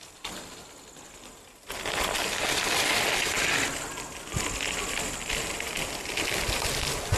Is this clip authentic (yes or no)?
yes